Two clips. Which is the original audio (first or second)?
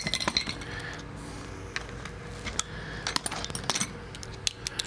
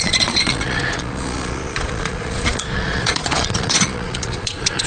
first